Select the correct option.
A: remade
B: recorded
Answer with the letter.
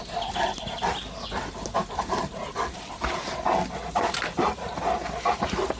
B